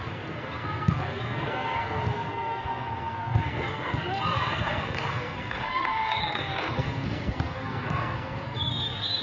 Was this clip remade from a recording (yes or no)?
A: yes